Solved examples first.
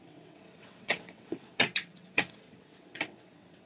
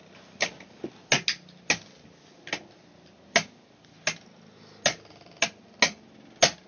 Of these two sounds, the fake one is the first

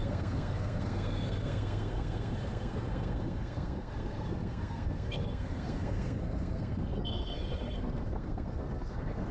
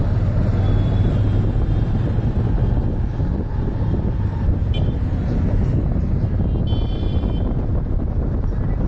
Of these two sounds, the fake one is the first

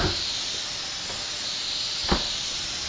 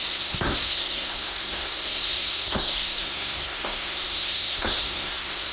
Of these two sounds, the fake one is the second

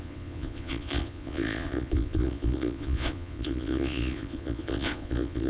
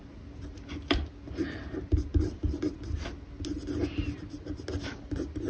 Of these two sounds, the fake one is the first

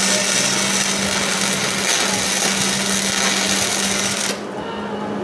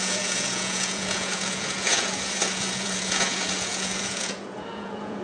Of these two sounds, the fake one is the second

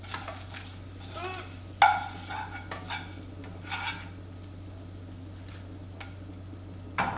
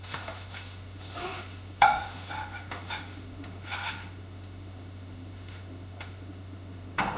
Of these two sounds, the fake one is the second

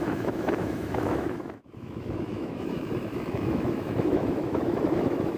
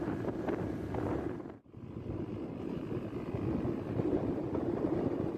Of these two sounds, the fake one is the first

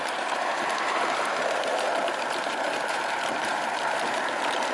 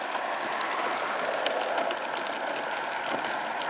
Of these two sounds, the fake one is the first